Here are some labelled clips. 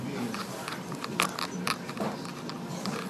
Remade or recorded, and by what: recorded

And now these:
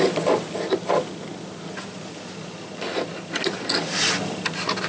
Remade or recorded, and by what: recorded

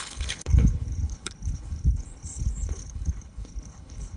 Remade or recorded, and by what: remade, codec, HILCodec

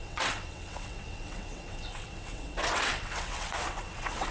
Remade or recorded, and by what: remade, vocoder, WaveNeXt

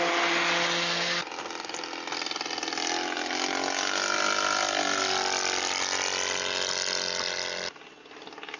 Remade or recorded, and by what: recorded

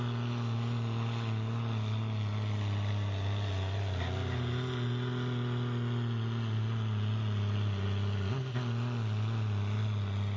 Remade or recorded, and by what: recorded